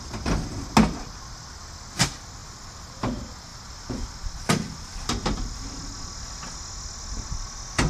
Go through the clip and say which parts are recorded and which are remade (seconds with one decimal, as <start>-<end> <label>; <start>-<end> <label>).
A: 0.0-2.4 recorded; 2.4-3.0 remade; 3.0-3.5 recorded; 3.5-6.4 remade; 6.4-7.9 recorded